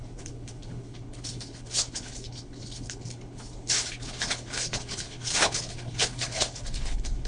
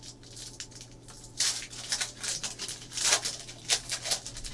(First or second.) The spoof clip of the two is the first